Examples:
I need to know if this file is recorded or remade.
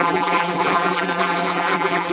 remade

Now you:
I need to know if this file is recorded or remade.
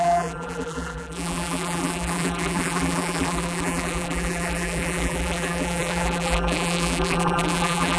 remade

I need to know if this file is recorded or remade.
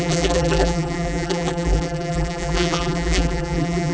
remade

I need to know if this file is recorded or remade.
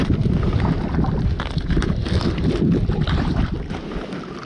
remade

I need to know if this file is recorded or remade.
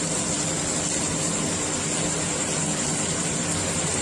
recorded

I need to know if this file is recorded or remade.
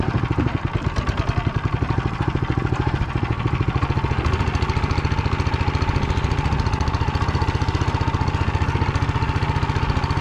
recorded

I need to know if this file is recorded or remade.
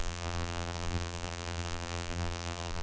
remade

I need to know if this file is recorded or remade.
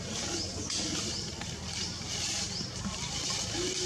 remade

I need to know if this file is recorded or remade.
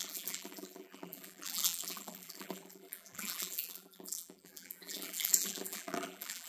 remade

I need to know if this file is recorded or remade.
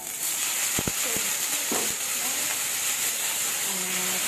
recorded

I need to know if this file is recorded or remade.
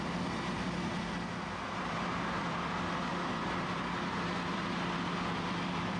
remade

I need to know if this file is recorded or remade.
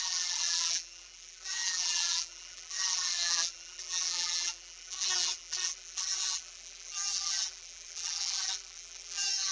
remade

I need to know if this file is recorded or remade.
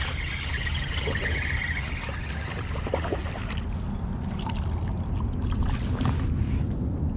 recorded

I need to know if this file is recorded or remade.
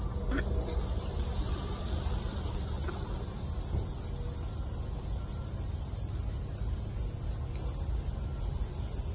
recorded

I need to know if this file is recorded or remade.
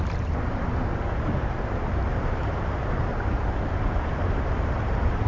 remade